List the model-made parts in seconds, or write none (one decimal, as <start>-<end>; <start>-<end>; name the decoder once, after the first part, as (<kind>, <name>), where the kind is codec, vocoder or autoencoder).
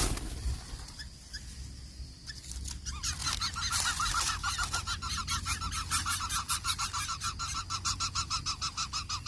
none